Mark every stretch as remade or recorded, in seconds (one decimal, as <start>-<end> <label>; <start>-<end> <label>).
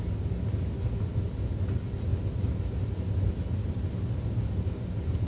0.0-5.3 recorded